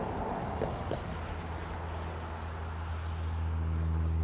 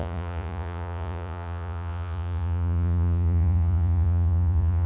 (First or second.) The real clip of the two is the first